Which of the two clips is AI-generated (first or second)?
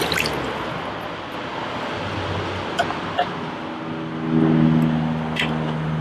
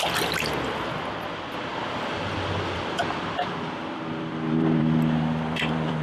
second